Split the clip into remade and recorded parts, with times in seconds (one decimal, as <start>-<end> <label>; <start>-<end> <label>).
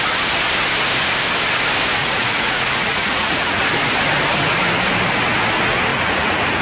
0.0-2.0 recorded; 2.0-3.6 remade; 3.6-5.9 recorded; 5.9-6.6 remade